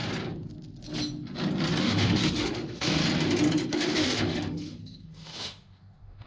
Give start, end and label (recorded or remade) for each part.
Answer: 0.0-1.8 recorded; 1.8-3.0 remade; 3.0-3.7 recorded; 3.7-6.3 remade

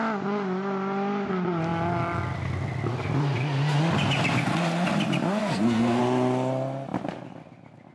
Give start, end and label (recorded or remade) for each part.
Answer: 0.0-5.4 recorded; 5.4-6.0 remade; 6.0-7.9 recorded

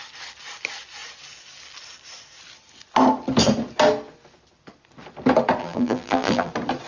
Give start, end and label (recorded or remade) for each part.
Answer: 0.0-5.6 recorded; 5.6-6.5 remade; 6.5-6.9 recorded

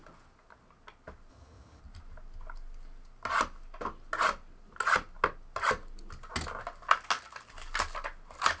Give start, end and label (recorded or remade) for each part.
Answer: 0.0-1.3 recorded; 1.3-1.8 remade; 1.8-8.6 recorded

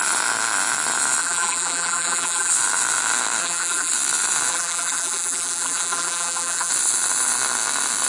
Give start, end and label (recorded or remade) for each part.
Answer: 0.0-1.2 recorded; 1.2-2.5 remade; 2.5-3.4 recorded; 3.4-3.9 remade; 3.9-4.5 recorded; 4.5-6.7 remade; 6.7-8.1 recorded